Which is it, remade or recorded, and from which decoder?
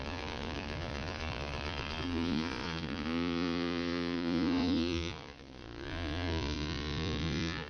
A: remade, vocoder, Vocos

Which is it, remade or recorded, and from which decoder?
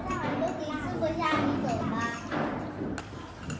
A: recorded